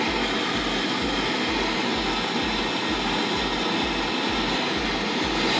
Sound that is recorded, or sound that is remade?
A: recorded